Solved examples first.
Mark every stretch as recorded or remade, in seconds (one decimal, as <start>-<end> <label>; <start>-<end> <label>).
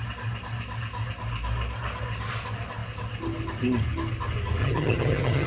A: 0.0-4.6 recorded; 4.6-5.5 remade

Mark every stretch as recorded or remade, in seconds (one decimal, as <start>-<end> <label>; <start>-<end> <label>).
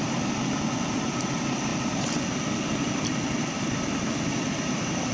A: 0.0-5.1 remade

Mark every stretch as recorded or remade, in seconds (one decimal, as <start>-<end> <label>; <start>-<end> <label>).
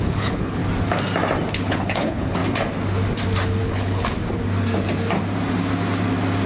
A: 0.0-0.6 remade; 0.6-1.5 recorded; 1.5-2.4 remade; 2.4-3.6 recorded; 3.6-4.0 remade; 4.0-6.5 recorded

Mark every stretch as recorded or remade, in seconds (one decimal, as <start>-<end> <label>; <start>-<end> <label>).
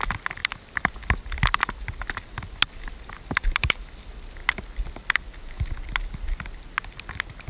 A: 0.0-7.5 recorded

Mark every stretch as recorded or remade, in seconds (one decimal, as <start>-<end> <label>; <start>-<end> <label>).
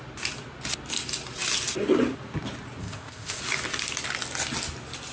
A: 0.0-2.8 recorded; 2.8-3.4 remade; 3.4-5.1 recorded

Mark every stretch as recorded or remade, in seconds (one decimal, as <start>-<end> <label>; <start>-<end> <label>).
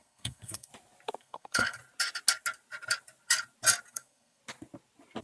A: 0.0-0.7 remade; 0.7-1.2 recorded; 1.2-1.8 remade; 1.8-3.9 recorded; 3.9-4.4 remade; 4.4-5.2 recorded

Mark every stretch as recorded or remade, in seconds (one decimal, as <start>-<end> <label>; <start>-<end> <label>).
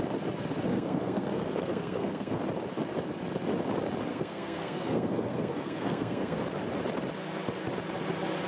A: 0.0-0.7 recorded; 0.7-2.4 remade; 2.4-4.1 recorded; 4.1-6.4 remade; 6.4-8.5 recorded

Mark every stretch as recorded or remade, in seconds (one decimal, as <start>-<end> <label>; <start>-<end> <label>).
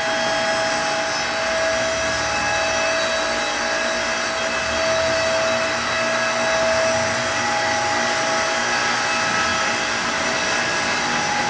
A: 0.0-11.5 recorded